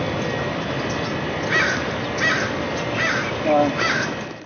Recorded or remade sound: recorded